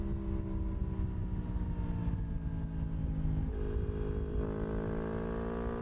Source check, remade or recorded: recorded